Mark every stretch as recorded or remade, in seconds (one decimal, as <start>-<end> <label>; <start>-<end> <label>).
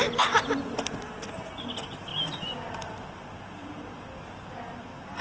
0.0-5.2 recorded